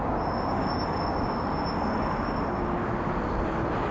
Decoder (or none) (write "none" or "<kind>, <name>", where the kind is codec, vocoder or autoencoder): none